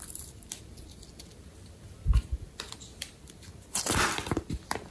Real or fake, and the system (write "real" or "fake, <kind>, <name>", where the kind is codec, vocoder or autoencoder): fake, vocoder, BigVGAN v2